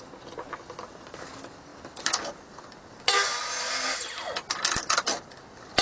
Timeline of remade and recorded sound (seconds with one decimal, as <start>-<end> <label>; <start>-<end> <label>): 0.0-5.8 recorded